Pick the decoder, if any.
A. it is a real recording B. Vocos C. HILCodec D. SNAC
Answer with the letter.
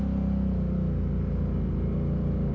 A